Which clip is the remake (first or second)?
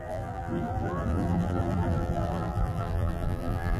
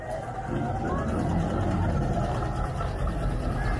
first